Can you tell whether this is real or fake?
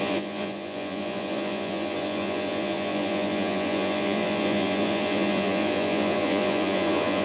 fake